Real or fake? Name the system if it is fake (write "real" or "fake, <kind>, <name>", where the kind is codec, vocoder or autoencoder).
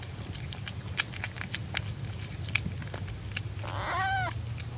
real